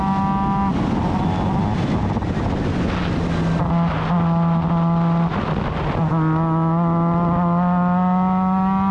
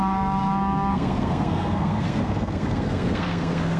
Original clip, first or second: first